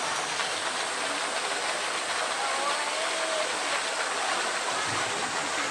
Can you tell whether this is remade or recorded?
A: recorded